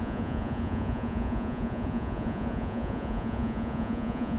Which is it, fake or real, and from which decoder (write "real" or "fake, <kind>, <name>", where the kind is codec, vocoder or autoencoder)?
fake, vocoder, Vocos